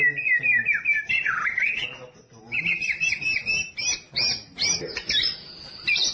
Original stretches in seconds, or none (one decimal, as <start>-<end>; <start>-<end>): 0.0-6.1